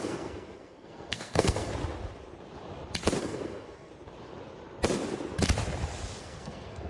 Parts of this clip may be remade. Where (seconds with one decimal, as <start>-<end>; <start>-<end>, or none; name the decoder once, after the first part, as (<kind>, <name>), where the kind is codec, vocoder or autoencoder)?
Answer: 0.0-1.7 (codec, SNAC); 3.2-3.9; 6.2-6.9